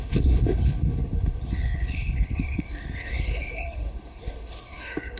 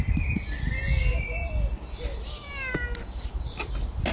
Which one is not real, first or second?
first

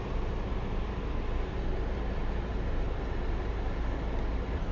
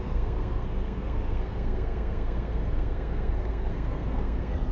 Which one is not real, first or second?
second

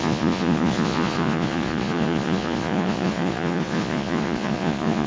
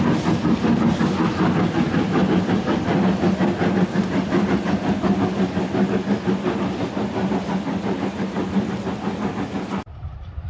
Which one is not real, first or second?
first